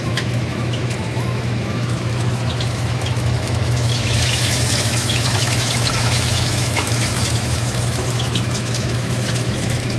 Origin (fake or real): fake